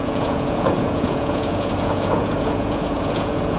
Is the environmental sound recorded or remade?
remade